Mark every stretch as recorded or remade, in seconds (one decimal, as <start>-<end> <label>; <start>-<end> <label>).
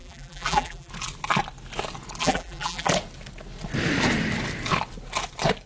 0.0-0.9 remade; 0.9-2.2 recorded; 2.2-2.9 remade; 2.9-5.7 recorded